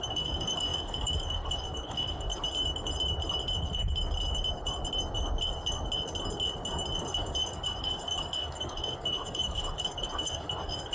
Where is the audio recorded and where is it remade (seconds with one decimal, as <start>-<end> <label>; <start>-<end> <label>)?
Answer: 0.0-2.3 remade; 2.3-7.0 recorded; 7.0-10.9 remade